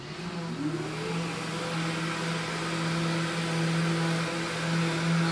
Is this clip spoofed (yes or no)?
no